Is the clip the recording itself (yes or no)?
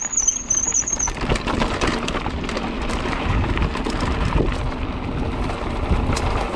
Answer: yes